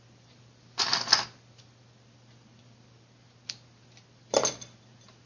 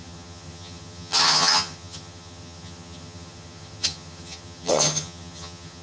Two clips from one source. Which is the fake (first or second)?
second